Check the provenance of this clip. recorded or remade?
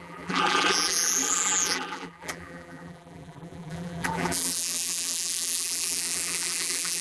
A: remade